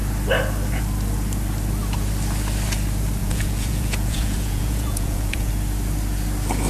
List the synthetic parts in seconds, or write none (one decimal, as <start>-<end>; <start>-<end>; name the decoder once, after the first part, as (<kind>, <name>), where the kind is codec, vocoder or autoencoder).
3.2-5.5 (vocoder, Vocos)